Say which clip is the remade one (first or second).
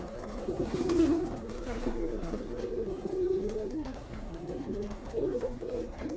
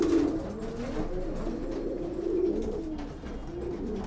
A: first